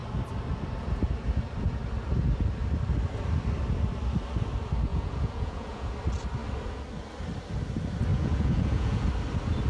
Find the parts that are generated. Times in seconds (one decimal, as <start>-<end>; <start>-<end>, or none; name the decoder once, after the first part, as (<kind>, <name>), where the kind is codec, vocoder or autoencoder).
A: 4.9-5.9 (vocoder, Vocos); 8.1-9.1